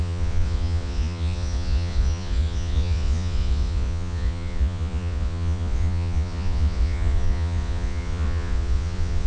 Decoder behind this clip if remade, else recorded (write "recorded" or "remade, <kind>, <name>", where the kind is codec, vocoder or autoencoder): remade, vocoder, Vocos